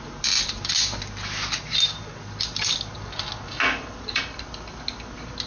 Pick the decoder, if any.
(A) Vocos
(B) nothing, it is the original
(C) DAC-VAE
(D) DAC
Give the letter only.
B